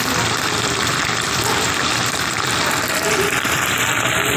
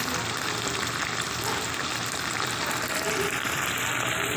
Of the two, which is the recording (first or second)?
second